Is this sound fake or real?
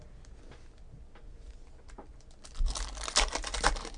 real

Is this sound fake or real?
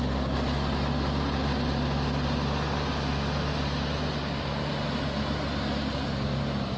real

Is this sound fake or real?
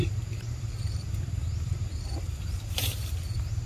fake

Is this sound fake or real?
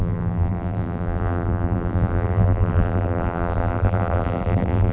fake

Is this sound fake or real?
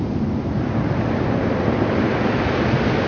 real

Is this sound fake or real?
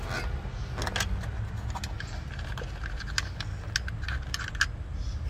real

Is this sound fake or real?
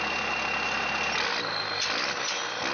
real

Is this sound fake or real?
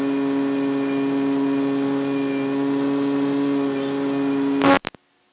real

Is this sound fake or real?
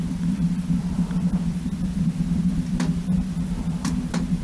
fake